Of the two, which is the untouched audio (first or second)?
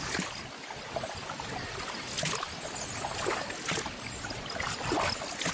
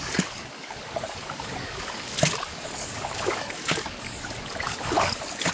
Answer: first